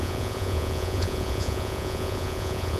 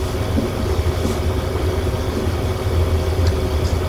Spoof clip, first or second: first